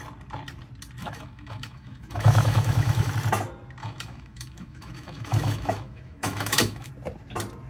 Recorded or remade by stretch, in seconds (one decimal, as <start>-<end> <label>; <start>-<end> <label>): 0.0-1.0 recorded; 1.0-3.1 remade; 3.1-3.8 recorded; 3.8-6.9 remade; 6.9-7.7 recorded